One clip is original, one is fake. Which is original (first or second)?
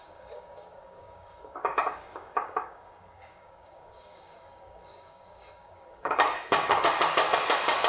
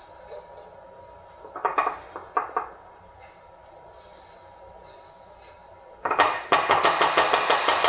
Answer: second